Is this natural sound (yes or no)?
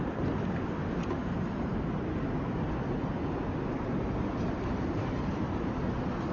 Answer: yes